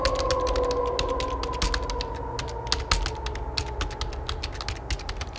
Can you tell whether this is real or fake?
real